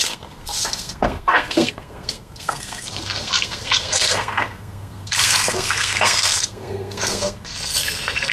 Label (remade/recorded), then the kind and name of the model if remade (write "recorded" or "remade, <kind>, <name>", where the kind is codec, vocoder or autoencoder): remade, codec, SNAC